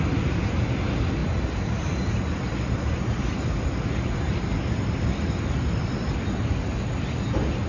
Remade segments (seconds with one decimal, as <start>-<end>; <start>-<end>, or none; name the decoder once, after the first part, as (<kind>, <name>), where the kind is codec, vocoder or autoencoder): none